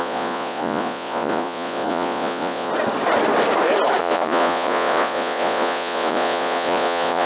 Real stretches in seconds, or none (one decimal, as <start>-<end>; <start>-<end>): 2.7-4.0